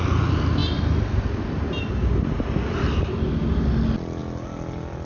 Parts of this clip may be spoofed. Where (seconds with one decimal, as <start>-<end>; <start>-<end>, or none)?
none